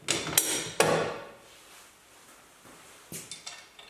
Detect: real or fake real